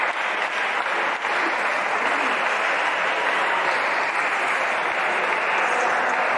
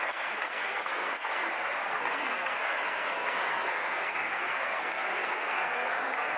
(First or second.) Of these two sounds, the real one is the first